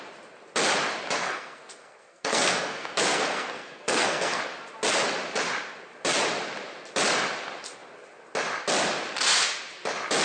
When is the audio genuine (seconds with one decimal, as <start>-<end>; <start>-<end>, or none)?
0.0-1.2; 4.4-10.2